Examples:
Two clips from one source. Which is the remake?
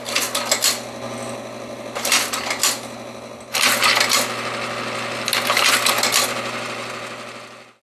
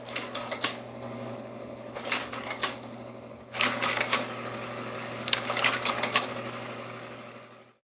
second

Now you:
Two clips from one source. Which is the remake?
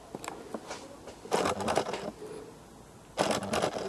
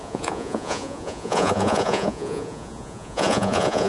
second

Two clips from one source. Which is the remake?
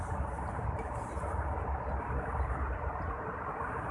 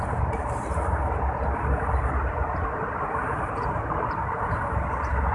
first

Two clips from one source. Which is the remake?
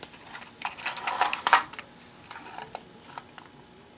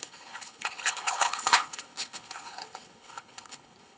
second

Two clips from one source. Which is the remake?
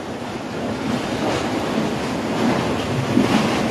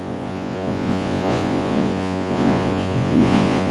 second